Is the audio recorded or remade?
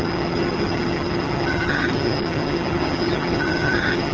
remade